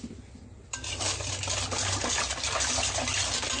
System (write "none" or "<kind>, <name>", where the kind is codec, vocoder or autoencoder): none